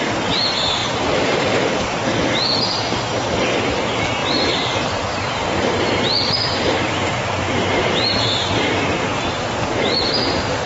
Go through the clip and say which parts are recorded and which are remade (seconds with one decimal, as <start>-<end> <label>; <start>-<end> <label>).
0.0-0.8 recorded; 0.8-3.8 remade; 3.8-4.2 recorded; 4.2-6.6 remade; 6.6-10.7 recorded